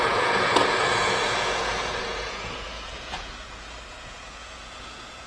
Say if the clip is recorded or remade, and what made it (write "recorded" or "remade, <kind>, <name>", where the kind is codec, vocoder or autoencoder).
remade, vocoder, Vocos